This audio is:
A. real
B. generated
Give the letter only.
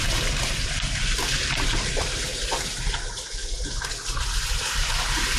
A